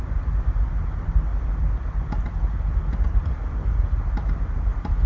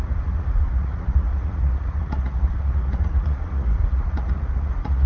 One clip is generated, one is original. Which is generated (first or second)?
second